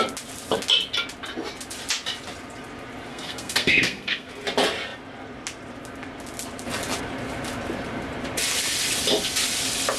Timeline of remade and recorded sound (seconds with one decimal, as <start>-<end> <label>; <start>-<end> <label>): 0.0-3.1 recorded; 3.1-4.3 remade; 4.3-10.0 recorded